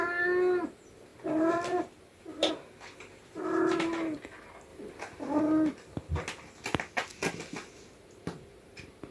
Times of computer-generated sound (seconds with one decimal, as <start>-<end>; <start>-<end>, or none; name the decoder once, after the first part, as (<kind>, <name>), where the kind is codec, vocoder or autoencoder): 1.1-2.5 (vocoder, BigVGAN v2); 4.7-5.4